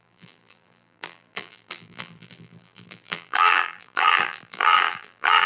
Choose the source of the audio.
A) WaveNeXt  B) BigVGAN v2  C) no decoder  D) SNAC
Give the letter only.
B